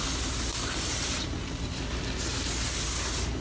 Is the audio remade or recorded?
recorded